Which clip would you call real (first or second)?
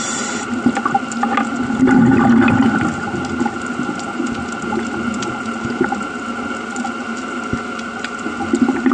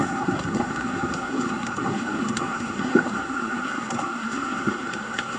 first